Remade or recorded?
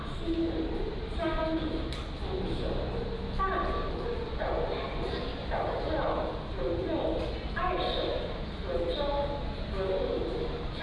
recorded